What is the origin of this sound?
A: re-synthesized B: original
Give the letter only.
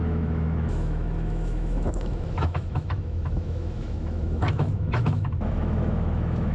A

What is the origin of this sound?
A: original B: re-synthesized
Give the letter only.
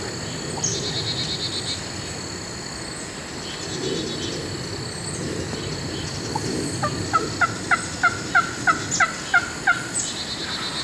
A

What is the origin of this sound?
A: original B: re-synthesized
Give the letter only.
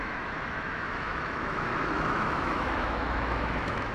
B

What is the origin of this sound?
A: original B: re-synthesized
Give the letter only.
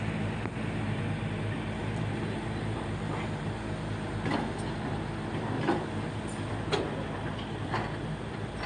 A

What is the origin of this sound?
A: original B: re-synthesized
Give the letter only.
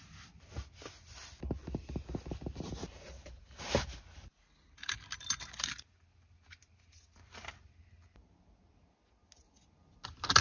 A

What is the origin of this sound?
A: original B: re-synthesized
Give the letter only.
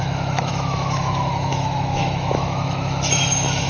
B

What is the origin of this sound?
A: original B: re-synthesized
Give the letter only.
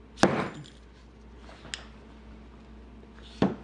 A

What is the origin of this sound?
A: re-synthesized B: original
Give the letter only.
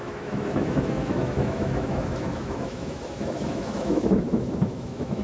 A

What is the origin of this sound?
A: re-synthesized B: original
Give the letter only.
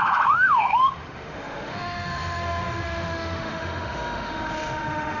A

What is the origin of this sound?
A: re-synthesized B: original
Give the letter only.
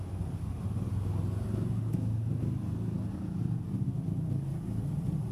B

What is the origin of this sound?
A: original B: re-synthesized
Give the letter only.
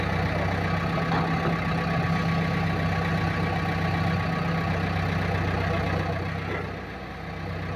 A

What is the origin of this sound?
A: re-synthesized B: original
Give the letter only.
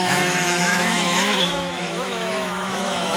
A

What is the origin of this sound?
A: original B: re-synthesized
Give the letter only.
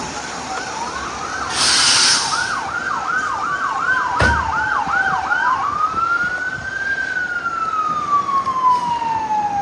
A